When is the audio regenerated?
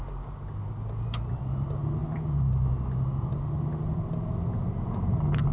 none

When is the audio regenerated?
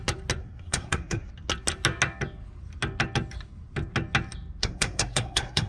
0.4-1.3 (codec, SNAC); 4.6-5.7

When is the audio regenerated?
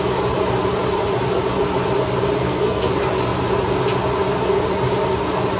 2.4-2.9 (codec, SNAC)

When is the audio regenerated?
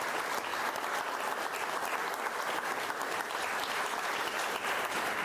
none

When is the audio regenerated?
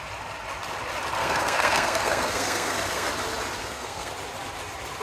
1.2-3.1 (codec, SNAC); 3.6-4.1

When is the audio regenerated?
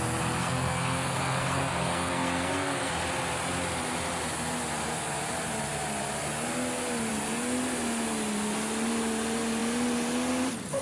0.4-2.9 (codec, SNAC)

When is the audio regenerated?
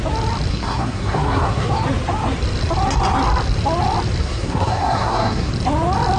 0.5-1.7 (codec, SNAC); 4.2-5.5